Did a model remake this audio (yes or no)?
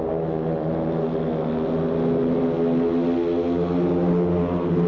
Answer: no